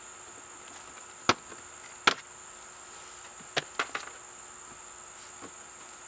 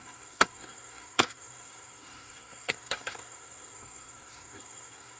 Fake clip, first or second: second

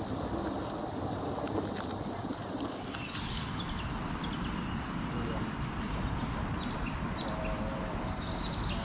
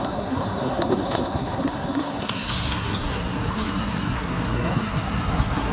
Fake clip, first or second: second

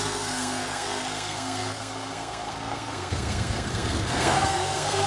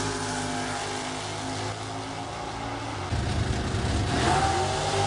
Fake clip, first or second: first